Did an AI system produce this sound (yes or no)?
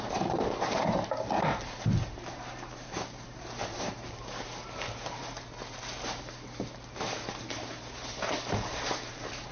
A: yes